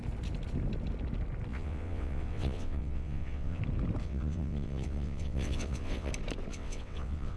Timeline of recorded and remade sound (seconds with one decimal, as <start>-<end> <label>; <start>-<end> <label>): 0.0-1.5 recorded; 1.5-3.6 remade; 3.6-4.0 recorded; 4.0-6.1 remade; 6.1-6.5 recorded; 6.5-7.4 remade